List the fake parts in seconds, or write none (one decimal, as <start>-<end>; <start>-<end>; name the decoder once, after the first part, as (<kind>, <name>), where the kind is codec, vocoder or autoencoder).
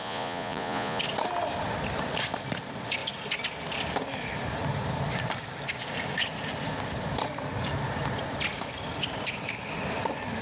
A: 0.0-1.0 (vocoder, Vocos)